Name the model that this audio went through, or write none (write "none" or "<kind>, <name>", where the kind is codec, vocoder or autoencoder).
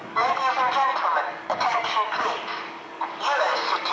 codec, DAC